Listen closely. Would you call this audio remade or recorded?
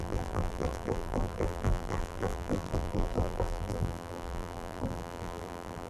remade